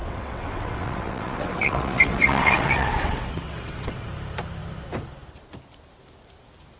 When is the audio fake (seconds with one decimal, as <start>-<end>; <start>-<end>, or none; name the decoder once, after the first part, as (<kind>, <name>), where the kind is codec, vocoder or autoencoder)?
0.0-4.1 (vocoder, WaveNeXt)